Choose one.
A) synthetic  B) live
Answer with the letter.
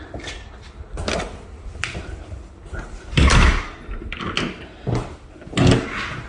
B